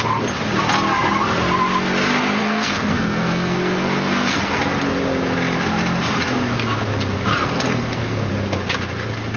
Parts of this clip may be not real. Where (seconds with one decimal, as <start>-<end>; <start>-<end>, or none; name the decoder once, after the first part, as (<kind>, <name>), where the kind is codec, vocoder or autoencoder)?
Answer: 2.4-4.6 (codec, SNAC); 7.3-8.3